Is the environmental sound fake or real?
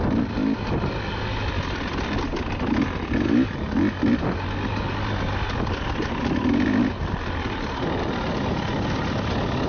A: real